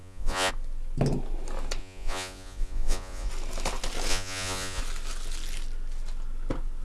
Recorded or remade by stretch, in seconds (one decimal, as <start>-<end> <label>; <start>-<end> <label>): 0.0-0.5 remade; 0.5-1.8 recorded; 1.8-3.3 remade; 3.3-4.1 recorded; 4.1-4.8 remade; 4.8-6.8 recorded